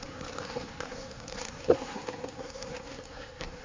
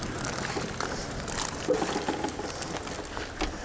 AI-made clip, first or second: first